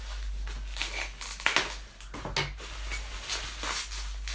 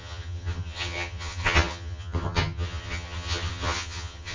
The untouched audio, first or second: first